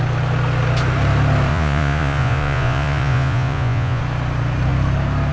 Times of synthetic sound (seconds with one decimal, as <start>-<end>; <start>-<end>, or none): 1.5-4.0